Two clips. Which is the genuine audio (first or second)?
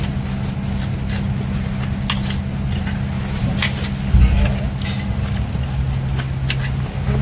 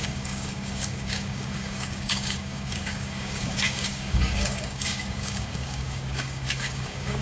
first